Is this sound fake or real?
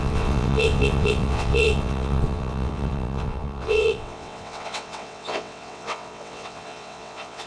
fake